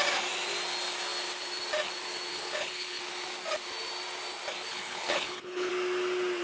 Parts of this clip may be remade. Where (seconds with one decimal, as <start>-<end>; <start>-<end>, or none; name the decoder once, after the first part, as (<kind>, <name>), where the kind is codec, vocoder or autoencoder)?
2.3-3.0 (codec, HILCodec); 4.7-5.7